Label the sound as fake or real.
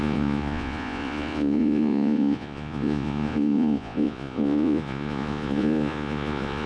fake